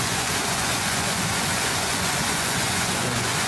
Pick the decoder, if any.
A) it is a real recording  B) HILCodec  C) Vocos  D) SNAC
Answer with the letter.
C